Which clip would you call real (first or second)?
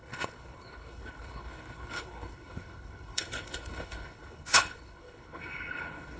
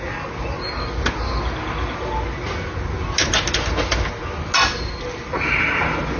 second